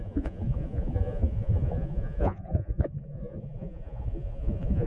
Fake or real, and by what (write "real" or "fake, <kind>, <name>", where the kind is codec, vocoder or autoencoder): fake, vocoder, Vocos